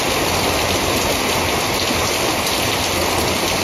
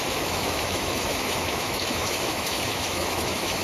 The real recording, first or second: first